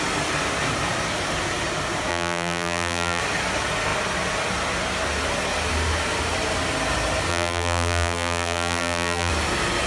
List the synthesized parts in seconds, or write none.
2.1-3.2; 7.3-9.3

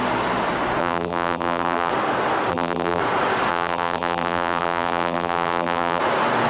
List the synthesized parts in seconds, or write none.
0.8-1.9; 2.5-3.0; 3.5-6.0

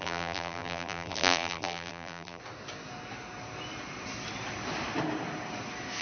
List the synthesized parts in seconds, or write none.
0.0-2.4

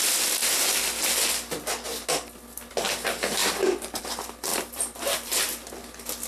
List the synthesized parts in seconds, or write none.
3.4-4.0; 4.5-5.7